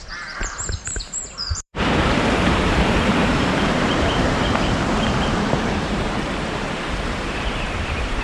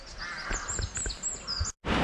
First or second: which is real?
second